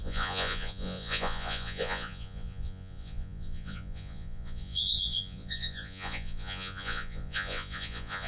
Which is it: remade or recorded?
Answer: remade